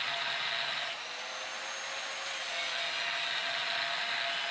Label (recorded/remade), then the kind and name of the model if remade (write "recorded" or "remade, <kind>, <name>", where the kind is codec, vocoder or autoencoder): recorded